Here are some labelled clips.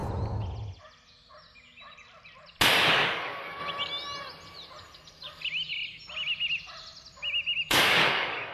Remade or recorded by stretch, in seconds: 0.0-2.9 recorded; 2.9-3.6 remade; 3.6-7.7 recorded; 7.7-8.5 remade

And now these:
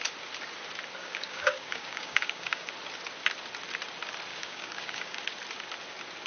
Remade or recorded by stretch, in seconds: 0.0-1.0 recorded; 1.0-2.7 remade; 2.7-4.3 recorded; 4.3-5.2 remade; 5.2-6.3 recorded

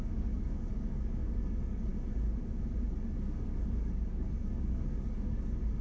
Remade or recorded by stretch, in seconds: 0.0-1.9 remade; 1.9-3.2 recorded; 3.2-5.8 remade

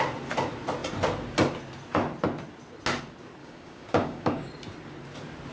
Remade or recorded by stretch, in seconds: 0.0-3.4 recorded; 3.4-4.5 remade; 4.5-5.5 recorded

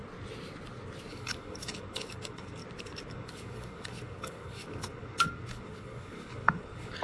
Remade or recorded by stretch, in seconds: 0.0-1.1 recorded; 1.1-2.6 remade; 2.6-3.1 recorded; 3.1-7.0 remade